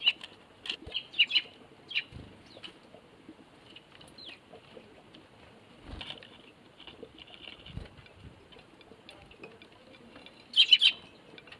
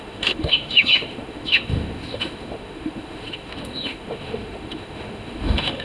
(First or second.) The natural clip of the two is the first